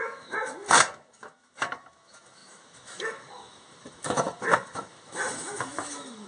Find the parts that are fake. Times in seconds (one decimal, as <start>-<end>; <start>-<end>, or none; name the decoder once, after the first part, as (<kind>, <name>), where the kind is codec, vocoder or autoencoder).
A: 0.0-6.3 (autoencoder, DAC-VAE)